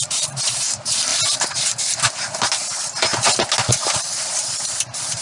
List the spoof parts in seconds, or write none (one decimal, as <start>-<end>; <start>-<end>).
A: 0.0-1.1; 3.7-5.2